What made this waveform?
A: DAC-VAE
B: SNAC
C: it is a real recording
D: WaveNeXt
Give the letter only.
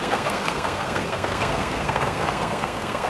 B